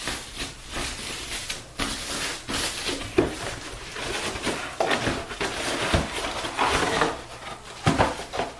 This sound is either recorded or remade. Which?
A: recorded